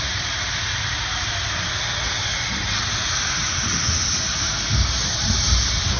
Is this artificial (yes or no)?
no